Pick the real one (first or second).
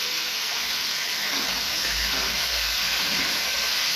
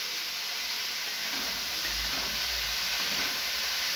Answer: second